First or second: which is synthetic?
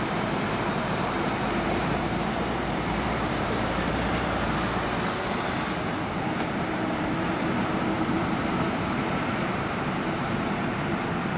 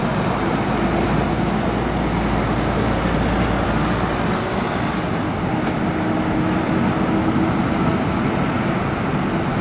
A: first